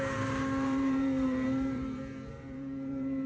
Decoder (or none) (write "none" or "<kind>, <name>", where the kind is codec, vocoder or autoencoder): vocoder, BigVGAN v2